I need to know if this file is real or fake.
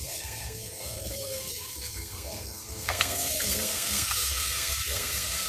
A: fake